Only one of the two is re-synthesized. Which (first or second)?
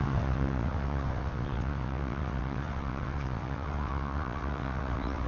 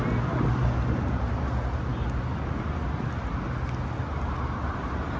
first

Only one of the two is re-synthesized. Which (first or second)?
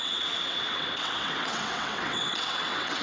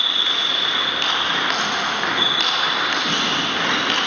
first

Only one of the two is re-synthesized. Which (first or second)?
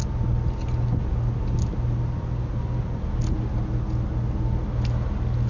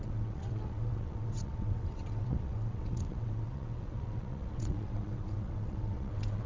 second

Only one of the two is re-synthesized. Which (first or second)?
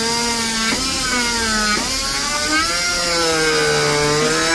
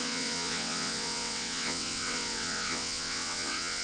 second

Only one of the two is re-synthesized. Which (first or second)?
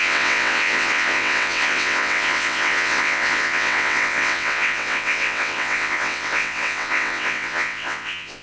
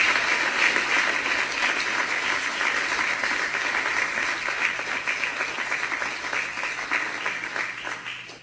first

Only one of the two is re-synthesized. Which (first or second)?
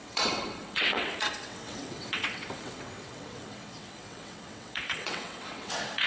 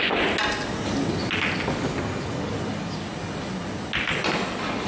first